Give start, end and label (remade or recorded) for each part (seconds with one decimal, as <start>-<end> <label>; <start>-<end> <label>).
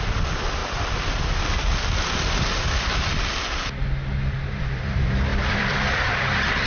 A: 0.0-0.6 remade; 0.6-4.6 recorded; 4.6-6.7 remade